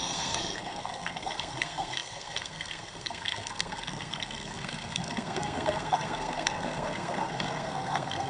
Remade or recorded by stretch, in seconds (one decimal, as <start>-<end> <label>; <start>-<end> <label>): 0.0-8.3 remade